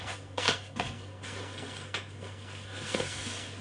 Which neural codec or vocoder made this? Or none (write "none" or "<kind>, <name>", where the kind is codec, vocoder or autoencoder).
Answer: codec, SNAC